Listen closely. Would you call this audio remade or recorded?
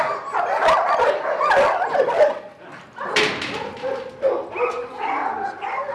recorded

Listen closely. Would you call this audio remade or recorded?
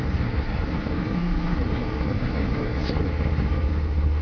remade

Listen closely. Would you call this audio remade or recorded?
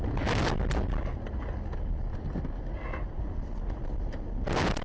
recorded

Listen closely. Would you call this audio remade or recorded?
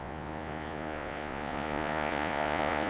remade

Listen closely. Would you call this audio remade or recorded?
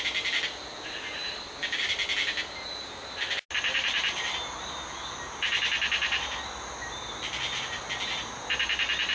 recorded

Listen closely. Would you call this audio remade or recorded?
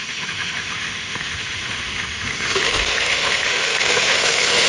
remade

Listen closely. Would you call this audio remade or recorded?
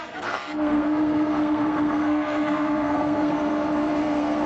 remade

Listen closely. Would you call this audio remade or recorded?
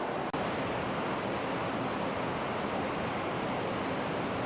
recorded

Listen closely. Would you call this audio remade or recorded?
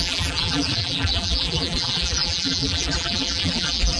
remade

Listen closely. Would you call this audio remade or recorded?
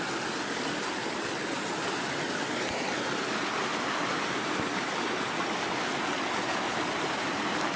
recorded